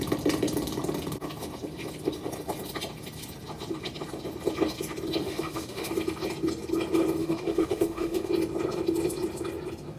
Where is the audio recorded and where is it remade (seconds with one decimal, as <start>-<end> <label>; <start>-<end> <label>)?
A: 0.0-5.2 recorded; 5.2-5.9 remade; 5.9-7.2 recorded; 7.2-8.3 remade; 8.3-10.0 recorded